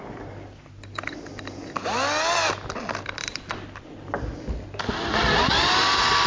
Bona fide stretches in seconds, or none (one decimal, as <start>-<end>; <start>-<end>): 0.0-6.3